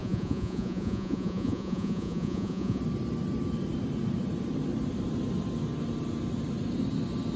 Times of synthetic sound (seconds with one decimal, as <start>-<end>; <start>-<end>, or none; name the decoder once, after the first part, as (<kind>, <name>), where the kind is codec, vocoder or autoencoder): 0.0-2.8 (vocoder, Vocos)